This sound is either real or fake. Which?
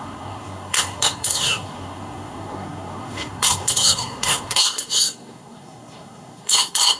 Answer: fake